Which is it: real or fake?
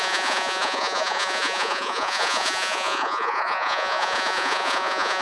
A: fake